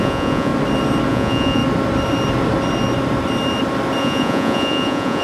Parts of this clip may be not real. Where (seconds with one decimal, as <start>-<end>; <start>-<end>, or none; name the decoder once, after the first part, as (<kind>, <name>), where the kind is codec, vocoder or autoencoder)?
0.0-0.5 (vocoder, Vocos); 1.1-1.6; 4.0-5.2